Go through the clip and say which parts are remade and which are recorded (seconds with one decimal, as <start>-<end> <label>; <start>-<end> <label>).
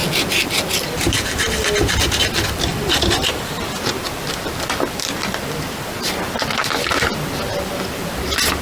0.0-8.6 remade